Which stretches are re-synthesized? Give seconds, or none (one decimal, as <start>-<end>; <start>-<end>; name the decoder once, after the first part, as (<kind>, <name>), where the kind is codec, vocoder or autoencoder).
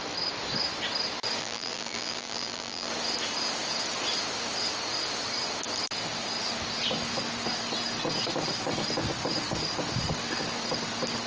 1.4-2.9 (vocoder, BigVGAN v2)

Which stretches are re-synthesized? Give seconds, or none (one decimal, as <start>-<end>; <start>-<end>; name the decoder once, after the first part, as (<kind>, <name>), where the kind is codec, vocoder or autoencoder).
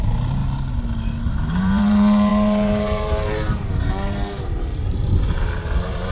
0.0-0.4 (vocoder, BigVGAN v2); 1.5-6.1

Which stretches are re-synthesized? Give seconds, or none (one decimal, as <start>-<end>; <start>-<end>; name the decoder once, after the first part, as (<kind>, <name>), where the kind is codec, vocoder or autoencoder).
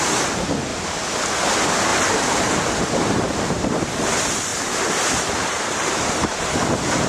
0.7-1.5 (vocoder, BigVGAN v2); 1.9-3.9; 4.5-6.5